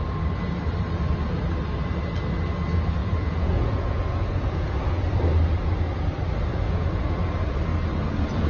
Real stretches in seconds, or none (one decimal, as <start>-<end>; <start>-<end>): 0.0-3.0; 5.0-6.5; 7.1-8.5